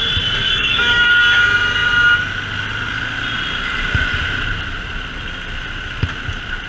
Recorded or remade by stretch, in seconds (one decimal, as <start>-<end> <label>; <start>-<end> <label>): 0.0-0.4 recorded; 0.4-1.2 remade; 1.2-6.7 recorded